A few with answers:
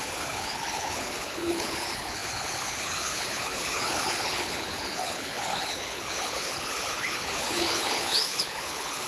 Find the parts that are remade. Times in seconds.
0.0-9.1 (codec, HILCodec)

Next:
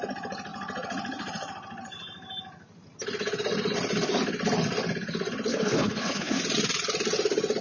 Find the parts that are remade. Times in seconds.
5.5-6.4 (codec, HILCodec)